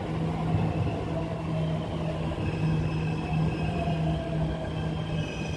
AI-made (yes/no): no